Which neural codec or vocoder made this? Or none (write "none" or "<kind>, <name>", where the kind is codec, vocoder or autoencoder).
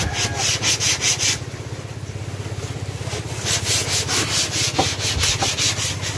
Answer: none